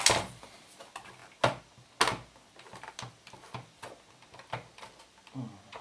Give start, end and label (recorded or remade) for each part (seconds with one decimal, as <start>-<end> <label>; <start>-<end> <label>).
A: 0.0-5.8 recorded